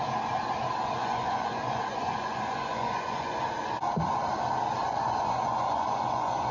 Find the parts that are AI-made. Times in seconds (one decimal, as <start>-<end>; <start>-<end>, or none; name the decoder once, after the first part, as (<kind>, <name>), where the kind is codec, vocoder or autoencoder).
1.0-3.4 (vocoder, Vocos); 4.8-6.5